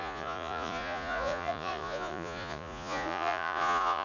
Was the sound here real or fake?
fake